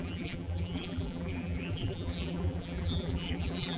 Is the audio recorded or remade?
remade